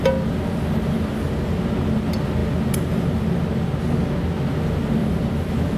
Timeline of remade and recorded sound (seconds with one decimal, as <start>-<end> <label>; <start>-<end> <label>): 0.0-5.0 recorded; 5.0-5.8 remade